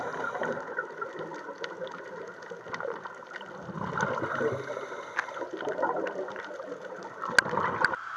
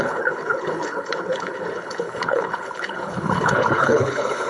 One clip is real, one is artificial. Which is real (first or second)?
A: first